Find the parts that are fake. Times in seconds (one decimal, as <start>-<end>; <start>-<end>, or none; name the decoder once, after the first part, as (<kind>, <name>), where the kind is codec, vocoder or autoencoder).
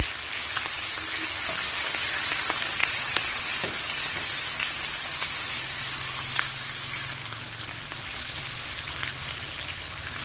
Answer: 2.8-3.4 (vocoder, WaveNeXt)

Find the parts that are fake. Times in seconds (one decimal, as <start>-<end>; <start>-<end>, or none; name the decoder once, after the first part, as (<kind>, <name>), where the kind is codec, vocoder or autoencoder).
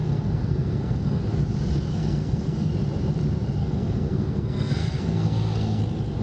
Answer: 0.0-1.2 (codec, SNAC); 1.9-2.7; 3.6-5.8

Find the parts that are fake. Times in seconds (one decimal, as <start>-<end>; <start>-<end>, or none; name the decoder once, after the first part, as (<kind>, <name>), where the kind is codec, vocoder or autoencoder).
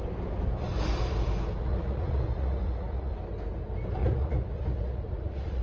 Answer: 1.6-3.1 (vocoder, Vocos); 4.0-5.6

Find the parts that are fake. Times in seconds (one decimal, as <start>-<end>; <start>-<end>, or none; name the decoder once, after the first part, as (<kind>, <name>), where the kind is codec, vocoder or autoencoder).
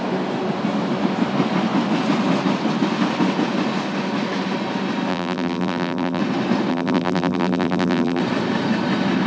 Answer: 5.1-6.2 (vocoder, BigVGAN v2); 6.7-8.2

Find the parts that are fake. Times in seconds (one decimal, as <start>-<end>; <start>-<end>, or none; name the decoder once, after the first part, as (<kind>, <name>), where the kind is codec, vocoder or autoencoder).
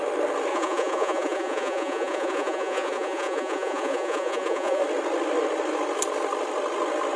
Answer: 0.5-4.8 (vocoder, Vocos)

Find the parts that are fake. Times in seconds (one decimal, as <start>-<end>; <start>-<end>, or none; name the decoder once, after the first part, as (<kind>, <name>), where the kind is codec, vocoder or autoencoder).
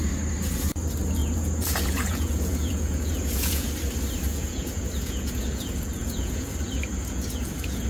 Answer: 1.2-3.7 (vocoder, Vocos); 4.3-7.9